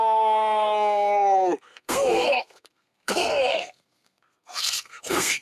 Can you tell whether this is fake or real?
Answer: fake